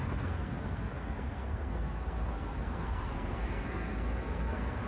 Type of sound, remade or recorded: remade